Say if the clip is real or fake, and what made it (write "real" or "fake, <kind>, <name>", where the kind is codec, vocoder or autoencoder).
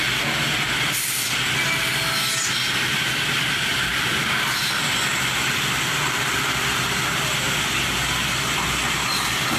real